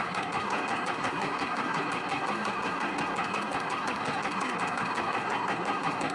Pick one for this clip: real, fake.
fake